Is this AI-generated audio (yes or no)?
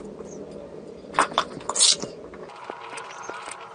no